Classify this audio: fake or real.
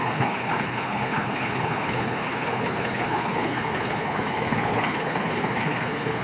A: fake